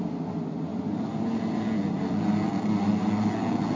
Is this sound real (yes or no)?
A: yes